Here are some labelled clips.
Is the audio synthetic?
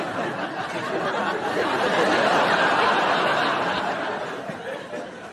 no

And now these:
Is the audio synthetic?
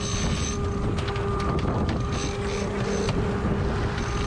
no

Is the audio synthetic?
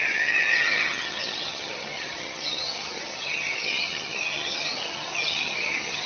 yes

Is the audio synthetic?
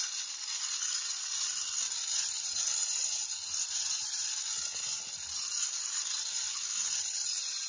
no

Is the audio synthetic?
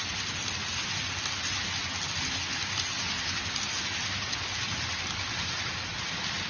no